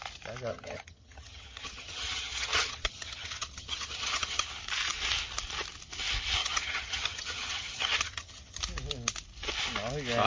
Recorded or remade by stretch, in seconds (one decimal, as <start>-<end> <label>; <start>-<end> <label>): 0.0-0.5 recorded; 0.5-4.5 remade; 4.5-6.4 recorded; 6.4-8.6 remade; 8.6-10.3 recorded